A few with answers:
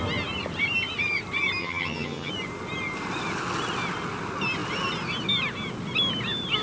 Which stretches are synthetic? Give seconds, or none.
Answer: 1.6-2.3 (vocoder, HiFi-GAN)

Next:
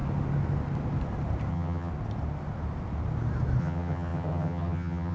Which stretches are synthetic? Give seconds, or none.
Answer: 1.5-1.9 (vocoder, HiFi-GAN); 3.6-5.1

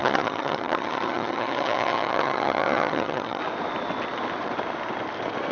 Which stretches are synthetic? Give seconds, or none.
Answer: 0.0-3.4 (vocoder, HiFi-GAN)

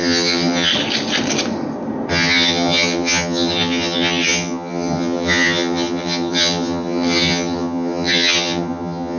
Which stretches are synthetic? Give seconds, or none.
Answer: 0.0-0.7 (vocoder, HiFi-GAN); 2.1-9.2